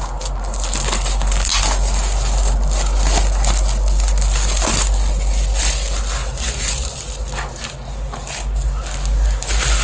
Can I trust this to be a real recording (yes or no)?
yes